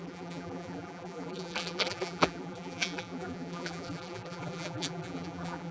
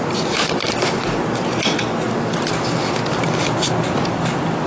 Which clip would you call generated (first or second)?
first